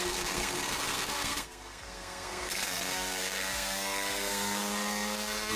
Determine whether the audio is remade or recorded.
remade